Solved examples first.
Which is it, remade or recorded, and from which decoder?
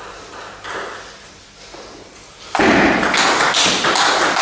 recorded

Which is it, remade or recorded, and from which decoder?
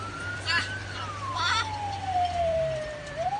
remade, vocoder, BigVGAN v2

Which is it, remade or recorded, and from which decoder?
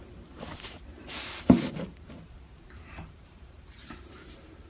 remade, vocoder, BigVGAN v2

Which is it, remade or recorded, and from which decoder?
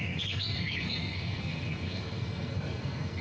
remade, codec, SNAC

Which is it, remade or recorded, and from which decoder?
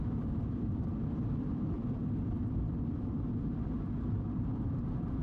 remade, vocoder, BigVGAN v2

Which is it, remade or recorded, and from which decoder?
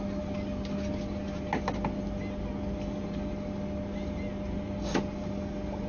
recorded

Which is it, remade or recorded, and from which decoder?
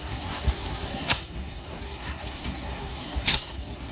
remade, codec, SNAC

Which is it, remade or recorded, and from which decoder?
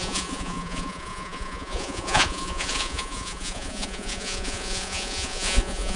remade, vocoder, Vocos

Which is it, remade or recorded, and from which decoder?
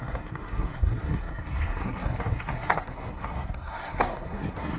remade, codec, SNAC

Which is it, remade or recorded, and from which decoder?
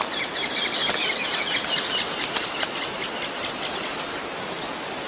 recorded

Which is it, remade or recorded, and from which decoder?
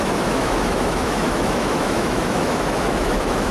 remade, autoencoder, DAC-VAE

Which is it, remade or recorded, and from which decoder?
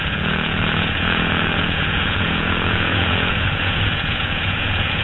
remade, vocoder, Vocos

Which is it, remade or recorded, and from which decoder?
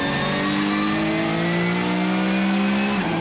recorded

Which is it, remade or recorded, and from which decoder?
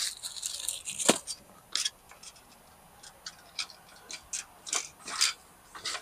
recorded